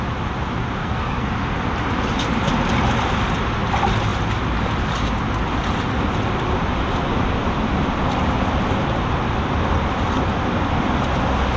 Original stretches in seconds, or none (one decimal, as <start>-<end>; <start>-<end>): 0.0-0.8; 1.3-11.6